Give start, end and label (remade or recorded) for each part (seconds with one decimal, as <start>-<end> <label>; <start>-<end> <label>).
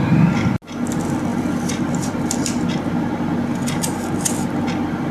0.0-5.1 recorded